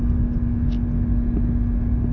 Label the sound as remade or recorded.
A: recorded